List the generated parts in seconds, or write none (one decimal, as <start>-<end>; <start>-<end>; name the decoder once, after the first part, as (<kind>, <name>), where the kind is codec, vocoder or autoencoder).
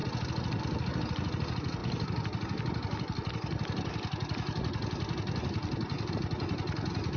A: none